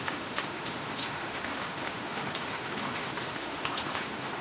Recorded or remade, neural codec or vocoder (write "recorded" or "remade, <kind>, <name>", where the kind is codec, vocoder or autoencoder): remade, autoencoder, DAC-VAE